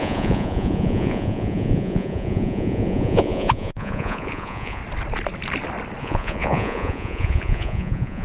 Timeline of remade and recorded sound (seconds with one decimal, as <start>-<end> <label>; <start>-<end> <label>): 0.0-4.8 remade; 4.8-6.0 recorded; 6.0-8.2 remade